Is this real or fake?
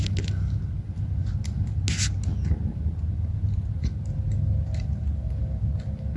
real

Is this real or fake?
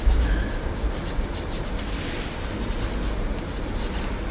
real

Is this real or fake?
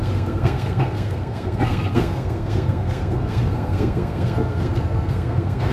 fake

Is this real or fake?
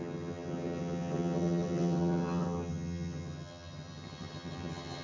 fake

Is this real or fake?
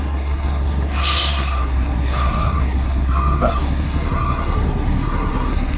fake